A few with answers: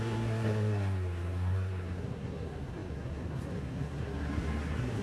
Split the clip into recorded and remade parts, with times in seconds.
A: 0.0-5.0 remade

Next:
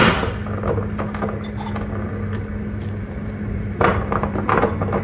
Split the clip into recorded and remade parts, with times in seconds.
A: 0.0-3.0 recorded; 3.0-5.0 remade

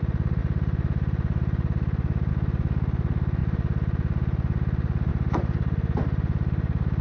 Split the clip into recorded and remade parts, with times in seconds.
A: 0.0-7.0 recorded

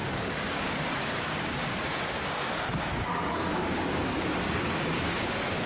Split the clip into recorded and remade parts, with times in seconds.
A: 0.0-5.7 remade

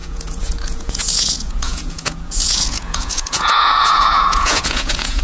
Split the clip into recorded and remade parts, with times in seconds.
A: 0.0-5.2 remade

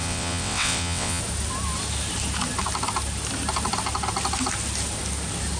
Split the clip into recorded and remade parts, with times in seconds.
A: 0.0-1.2 remade; 1.2-5.6 recorded